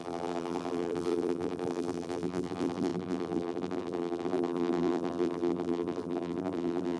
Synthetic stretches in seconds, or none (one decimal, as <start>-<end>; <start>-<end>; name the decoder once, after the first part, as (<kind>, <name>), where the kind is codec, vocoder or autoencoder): 0.0-7.0 (vocoder, BigVGAN v2)